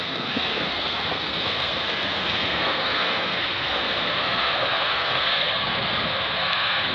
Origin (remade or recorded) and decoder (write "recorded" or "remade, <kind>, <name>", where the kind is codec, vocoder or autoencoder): remade, codec, SNAC